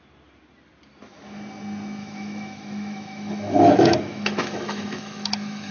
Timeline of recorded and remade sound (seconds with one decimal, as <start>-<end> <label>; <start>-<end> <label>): 0.0-2.0 recorded; 2.0-5.7 remade